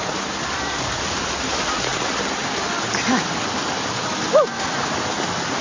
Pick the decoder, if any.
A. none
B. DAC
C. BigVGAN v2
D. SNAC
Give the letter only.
A